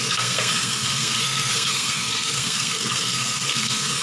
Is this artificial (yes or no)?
yes